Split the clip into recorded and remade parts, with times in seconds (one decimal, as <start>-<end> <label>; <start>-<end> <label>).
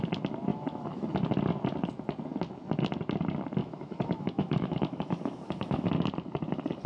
0.0-0.5 recorded; 0.5-1.1 remade; 1.1-3.6 recorded; 3.6-5.9 remade; 5.9-6.9 recorded